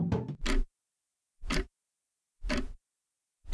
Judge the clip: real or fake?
real